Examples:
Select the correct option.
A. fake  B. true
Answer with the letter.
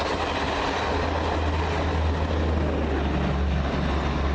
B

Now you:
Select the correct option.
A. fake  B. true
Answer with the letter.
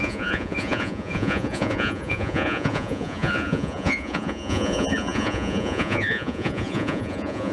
A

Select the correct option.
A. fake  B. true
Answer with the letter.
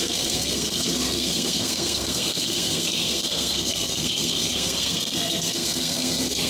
A